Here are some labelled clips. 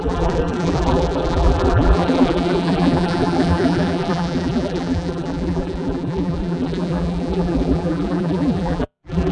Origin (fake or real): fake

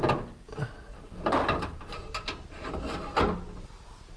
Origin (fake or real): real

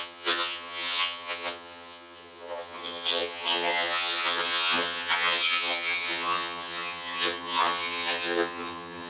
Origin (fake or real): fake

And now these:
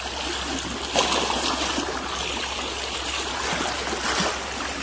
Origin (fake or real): real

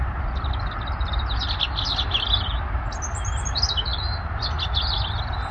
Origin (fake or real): real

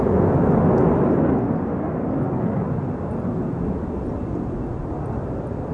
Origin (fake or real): real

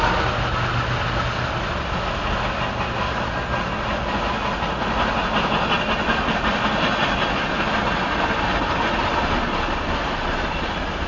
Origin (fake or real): real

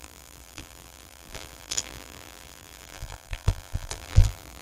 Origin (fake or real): fake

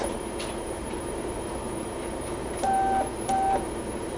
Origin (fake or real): fake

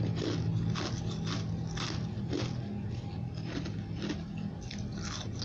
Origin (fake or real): real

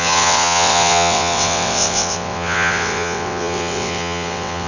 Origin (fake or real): fake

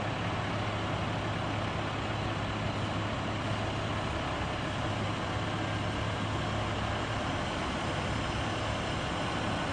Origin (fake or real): real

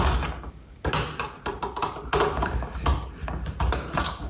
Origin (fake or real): real